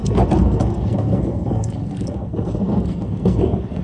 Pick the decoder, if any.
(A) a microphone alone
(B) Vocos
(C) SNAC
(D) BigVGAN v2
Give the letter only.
C